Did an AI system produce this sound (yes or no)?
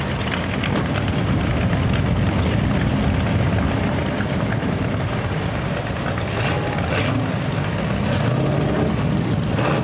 no